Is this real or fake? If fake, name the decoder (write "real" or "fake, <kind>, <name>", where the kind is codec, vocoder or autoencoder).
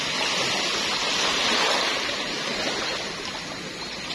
real